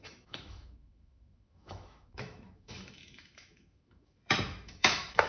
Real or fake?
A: fake